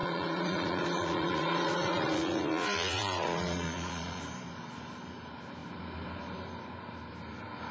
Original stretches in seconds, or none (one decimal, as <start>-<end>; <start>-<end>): 4.2-7.7